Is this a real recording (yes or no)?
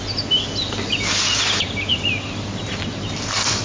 yes